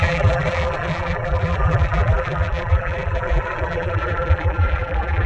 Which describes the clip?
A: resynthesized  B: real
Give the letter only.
A